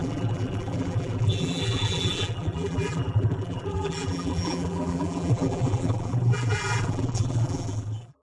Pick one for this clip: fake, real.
fake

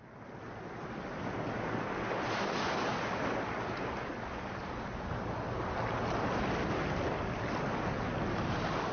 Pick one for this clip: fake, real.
real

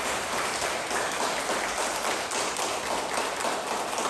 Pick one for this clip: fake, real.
real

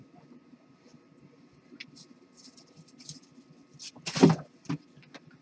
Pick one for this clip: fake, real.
real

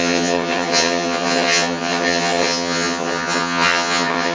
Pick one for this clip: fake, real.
fake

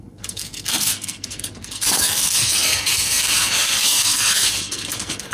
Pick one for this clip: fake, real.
fake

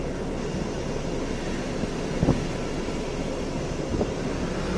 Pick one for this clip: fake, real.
real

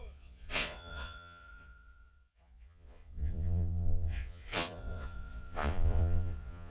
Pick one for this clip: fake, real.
fake